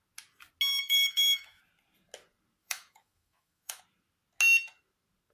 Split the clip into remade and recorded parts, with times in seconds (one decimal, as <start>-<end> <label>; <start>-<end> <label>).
0.0-0.7 recorded; 0.7-1.6 remade; 1.6-2.6 recorded; 2.6-3.8 remade; 3.8-5.3 recorded